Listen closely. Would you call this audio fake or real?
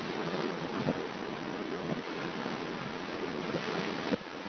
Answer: fake